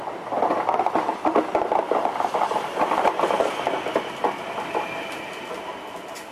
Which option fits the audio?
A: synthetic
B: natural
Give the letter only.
B